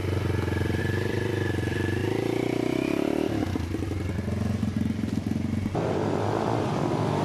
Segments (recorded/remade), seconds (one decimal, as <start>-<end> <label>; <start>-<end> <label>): 0.0-0.8 recorded; 0.8-2.0 remade; 2.0-6.3 recorded; 6.3-7.2 remade